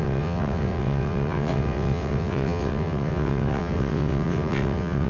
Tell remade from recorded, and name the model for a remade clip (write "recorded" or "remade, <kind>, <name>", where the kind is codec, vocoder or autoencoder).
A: remade, vocoder, WaveNeXt